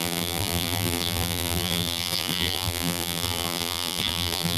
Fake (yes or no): yes